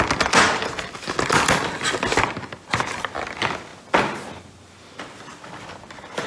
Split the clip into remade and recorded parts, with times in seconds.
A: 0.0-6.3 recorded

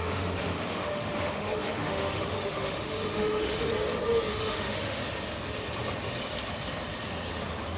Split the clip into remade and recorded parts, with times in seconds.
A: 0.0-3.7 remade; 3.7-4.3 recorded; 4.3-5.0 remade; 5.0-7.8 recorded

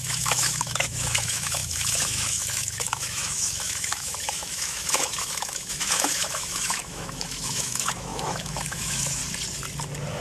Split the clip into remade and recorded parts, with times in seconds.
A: 0.0-9.2 remade; 9.2-10.2 recorded

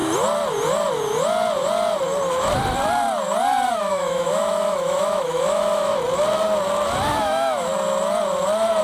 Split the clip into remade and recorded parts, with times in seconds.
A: 0.0-3.7 recorded; 3.7-5.9 remade; 5.9-7.2 recorded; 7.2-7.7 remade; 7.7-8.8 recorded

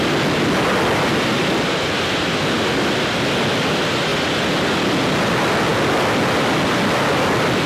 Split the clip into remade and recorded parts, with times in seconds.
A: 0.0-7.7 recorded

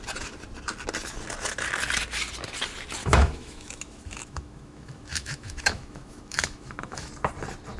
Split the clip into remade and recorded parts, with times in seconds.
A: 0.0-3.0 recorded; 3.0-7.1 remade; 7.1-7.8 recorded